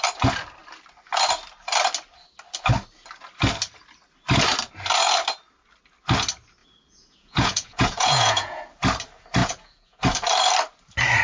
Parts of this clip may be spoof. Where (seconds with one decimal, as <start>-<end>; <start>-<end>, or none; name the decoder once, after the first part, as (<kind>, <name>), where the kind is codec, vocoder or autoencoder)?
6.6-8.6 (vocoder, Vocos); 9.4-10.0